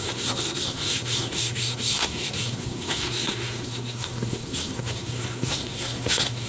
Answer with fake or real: fake